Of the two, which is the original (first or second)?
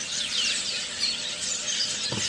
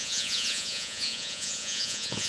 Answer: first